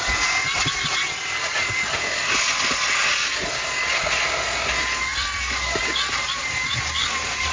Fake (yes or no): no